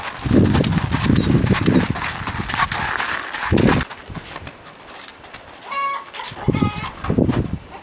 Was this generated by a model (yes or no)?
yes